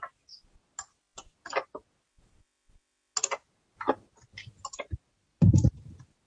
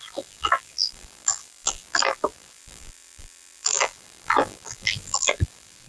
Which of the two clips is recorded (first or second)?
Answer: first